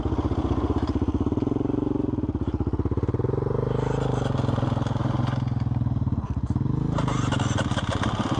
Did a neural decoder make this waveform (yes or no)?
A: no